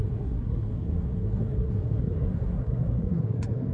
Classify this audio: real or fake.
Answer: fake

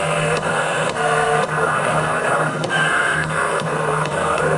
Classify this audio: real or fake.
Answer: fake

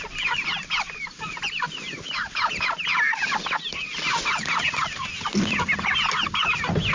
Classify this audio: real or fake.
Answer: real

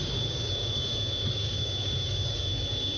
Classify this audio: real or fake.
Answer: fake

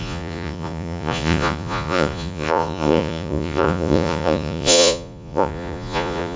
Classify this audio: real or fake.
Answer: fake